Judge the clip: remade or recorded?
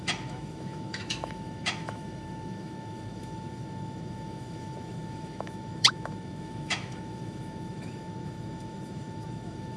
remade